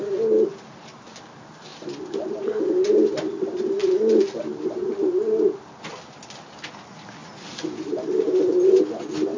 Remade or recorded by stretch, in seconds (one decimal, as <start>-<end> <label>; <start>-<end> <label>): 0.0-1.7 recorded; 1.7-3.4 remade; 3.4-3.8 recorded; 3.8-5.6 remade; 5.6-7.2 recorded; 7.2-7.9 remade; 7.9-9.4 recorded